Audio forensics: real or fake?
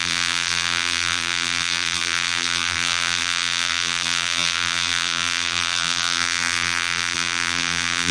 fake